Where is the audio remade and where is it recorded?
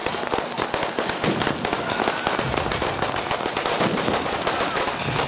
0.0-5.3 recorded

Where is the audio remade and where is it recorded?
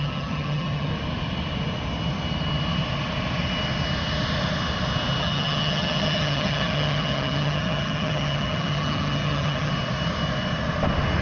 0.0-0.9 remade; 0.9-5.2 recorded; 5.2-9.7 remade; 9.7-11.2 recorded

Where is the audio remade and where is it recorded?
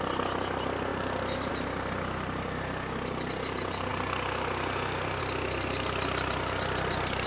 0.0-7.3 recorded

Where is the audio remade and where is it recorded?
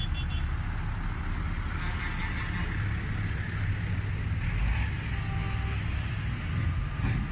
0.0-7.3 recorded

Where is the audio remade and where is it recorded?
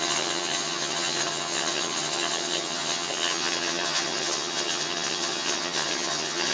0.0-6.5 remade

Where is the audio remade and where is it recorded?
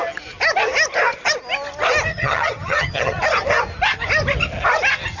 0.0-2.1 recorded; 2.1-3.2 remade; 3.2-5.2 recorded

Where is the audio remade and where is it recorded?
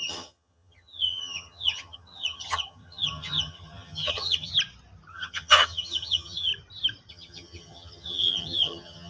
0.0-4.5 remade; 4.5-5.1 recorded; 5.1-6.5 remade; 6.5-7.1 recorded; 7.1-9.1 remade